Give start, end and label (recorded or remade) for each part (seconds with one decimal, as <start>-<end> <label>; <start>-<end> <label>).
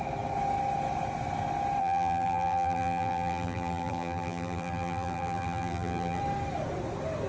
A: 0.0-1.8 recorded; 1.8-6.2 remade; 6.2-7.3 recorded